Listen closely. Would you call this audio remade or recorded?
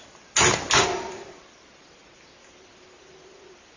recorded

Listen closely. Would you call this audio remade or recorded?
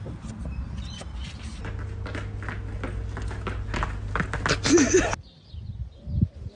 recorded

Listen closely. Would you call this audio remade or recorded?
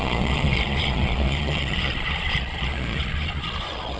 remade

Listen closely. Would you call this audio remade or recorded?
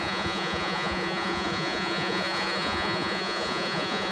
remade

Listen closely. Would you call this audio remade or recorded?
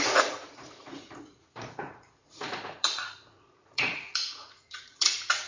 remade